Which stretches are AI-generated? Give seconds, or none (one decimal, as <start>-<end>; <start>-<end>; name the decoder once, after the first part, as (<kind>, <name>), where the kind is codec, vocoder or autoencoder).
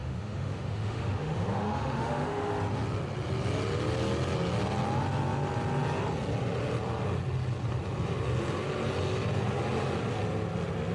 0.0-2.5 (autoencoder, DAC-VAE)